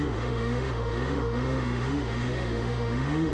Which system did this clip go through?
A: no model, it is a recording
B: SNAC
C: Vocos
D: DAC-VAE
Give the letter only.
D